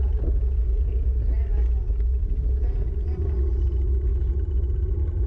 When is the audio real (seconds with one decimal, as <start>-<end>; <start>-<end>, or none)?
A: 0.0-5.3